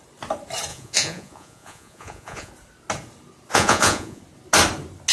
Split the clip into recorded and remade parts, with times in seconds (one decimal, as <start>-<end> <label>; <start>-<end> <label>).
0.0-0.7 recorded; 0.7-2.5 remade; 2.5-3.5 recorded; 3.5-4.2 remade; 4.2-5.1 recorded